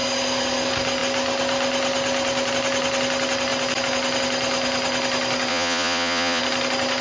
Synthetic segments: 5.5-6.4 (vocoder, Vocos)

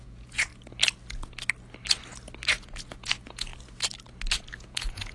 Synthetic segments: 0.0-0.5 (vocoder, Vocos); 2.5-3.5; 4.5-5.1

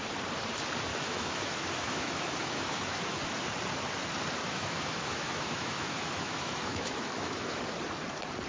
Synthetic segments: 0.9-3.2 (autoencoder, DAC-VAE); 4.4-7.6